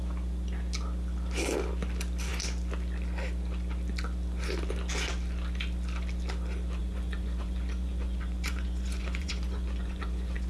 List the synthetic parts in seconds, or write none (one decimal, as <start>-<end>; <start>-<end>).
6.8-10.5